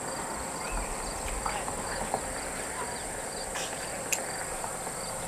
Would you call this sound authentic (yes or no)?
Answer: yes